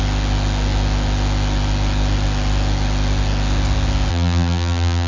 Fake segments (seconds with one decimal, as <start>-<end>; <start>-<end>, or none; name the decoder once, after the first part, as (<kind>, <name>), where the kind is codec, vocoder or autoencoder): 4.1-5.1 (vocoder, BigVGAN v2)